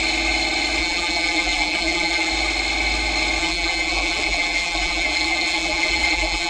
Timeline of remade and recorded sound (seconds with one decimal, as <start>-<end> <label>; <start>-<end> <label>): 0.0-0.8 recorded; 0.8-2.3 remade; 2.3-3.4 recorded; 3.4-6.5 remade